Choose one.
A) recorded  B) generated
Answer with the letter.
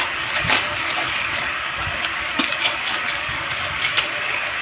B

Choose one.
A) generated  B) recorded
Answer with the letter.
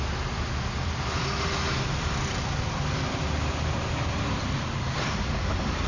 B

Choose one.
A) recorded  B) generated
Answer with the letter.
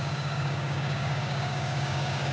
B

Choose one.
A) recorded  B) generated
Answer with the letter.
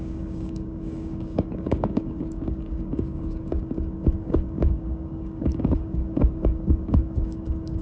B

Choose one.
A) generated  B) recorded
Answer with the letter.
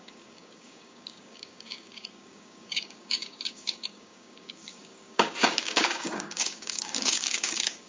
A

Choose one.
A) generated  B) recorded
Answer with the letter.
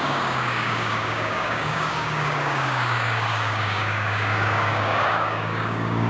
A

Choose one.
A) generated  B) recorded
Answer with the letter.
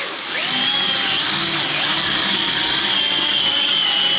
A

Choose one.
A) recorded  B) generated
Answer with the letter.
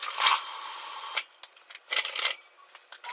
A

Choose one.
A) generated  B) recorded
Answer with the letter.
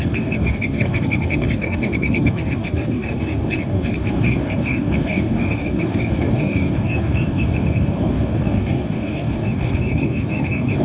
A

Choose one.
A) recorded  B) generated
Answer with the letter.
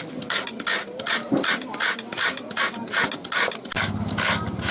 A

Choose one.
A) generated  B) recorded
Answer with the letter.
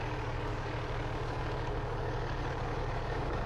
A